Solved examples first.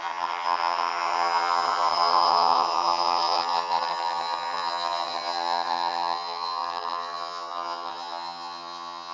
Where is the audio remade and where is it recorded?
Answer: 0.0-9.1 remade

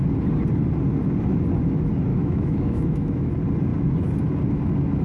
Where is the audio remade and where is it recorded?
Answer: 0.0-2.1 recorded; 2.1-3.3 remade; 3.3-5.0 recorded